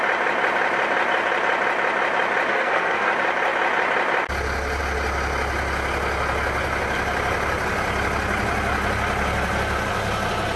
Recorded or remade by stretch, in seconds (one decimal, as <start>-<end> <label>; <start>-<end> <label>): 0.0-2.5 recorded; 2.5-3.1 remade; 3.1-10.6 recorded